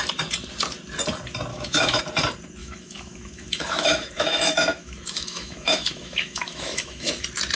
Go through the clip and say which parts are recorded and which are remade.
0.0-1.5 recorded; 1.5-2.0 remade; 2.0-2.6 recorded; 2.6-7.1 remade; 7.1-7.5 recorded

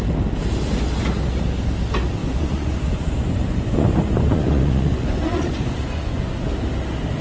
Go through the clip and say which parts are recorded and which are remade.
0.0-2.2 recorded; 2.2-6.5 remade; 6.5-7.2 recorded

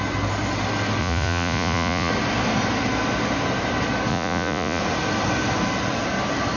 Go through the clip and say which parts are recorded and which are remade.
0.0-1.0 recorded; 1.0-2.1 remade; 2.1-4.1 recorded; 4.1-4.8 remade; 4.8-6.6 recorded

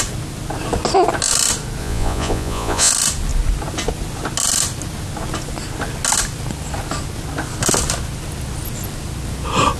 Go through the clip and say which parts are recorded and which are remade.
0.0-1.8 recorded; 1.8-2.9 remade; 2.9-9.8 recorded

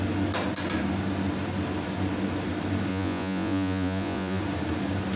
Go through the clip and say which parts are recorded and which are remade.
0.0-2.9 recorded; 2.9-4.4 remade; 4.4-5.2 recorded

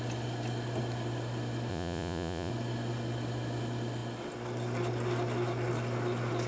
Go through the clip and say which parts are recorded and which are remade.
0.0-1.7 recorded; 1.7-2.5 remade; 2.5-6.5 recorded

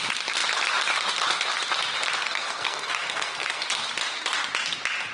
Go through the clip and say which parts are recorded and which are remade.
0.0-2.2 recorded; 2.2-3.6 remade; 3.6-5.1 recorded